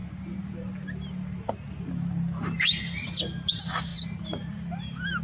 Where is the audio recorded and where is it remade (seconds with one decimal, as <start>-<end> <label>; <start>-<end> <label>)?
0.0-5.2 recorded